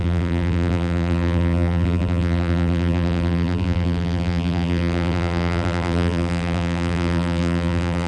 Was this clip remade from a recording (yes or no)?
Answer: yes